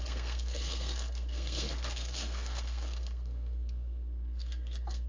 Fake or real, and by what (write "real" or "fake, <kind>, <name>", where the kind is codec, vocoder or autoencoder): fake, codec, SNAC